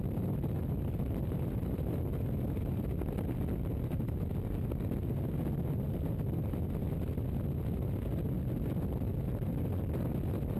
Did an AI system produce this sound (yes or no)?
no